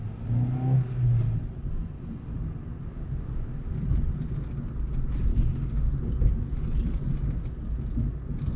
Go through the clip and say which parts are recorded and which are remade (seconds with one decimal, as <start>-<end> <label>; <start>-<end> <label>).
0.0-2.9 recorded; 2.9-3.4 remade; 3.4-5.3 recorded; 5.3-5.9 remade; 5.9-8.6 recorded